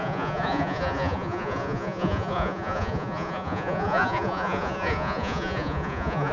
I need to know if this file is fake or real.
fake